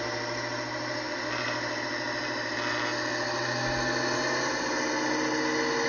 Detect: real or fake real